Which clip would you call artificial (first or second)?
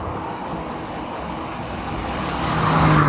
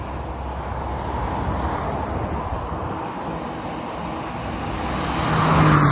first